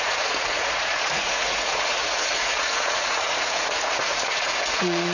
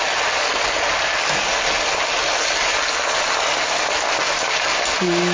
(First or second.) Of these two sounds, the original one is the second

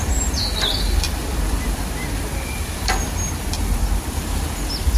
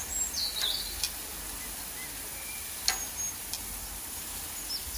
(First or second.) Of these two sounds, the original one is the second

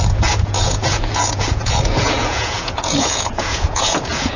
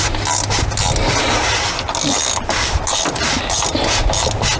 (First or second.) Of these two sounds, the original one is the second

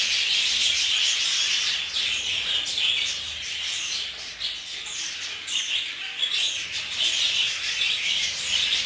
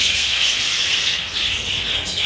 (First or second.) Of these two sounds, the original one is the first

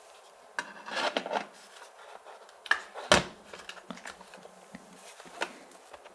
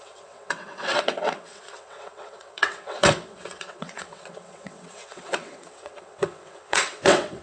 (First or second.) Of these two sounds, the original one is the first